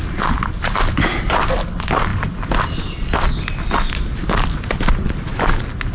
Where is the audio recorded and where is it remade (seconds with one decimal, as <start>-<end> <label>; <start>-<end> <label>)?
0.0-5.9 recorded